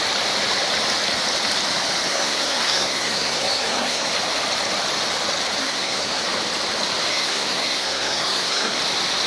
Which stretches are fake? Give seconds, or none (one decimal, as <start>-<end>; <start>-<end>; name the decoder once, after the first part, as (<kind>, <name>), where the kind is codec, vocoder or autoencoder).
2.1-4.1 (codec, SNAC); 5.6-6.2; 7.1-8.8